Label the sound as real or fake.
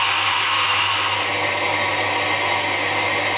real